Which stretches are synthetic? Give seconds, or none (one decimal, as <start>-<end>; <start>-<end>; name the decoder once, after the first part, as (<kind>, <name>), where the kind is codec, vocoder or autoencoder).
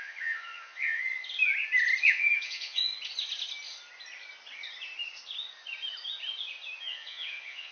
0.0-1.0 (vocoder, Vocos); 2.0-2.9; 6.8-7.7